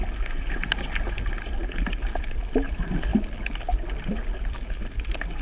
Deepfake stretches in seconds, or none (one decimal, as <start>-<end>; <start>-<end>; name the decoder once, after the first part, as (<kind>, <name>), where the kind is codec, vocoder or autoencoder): none